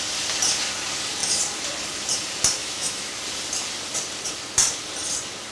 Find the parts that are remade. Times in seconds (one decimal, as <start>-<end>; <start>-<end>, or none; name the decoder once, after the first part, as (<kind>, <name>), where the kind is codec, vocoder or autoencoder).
2.6-3.1 (autoencoder, DAC-VAE)